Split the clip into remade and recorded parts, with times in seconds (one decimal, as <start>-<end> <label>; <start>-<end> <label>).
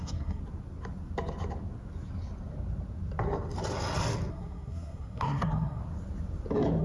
0.0-0.4 remade; 0.4-4.3 recorded; 4.3-5.8 remade; 5.8-6.8 recorded